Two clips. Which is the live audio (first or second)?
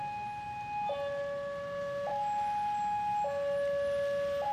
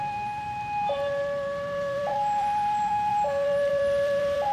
first